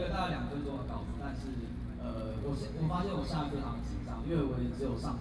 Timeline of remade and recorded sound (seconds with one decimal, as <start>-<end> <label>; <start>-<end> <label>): 0.0-5.2 recorded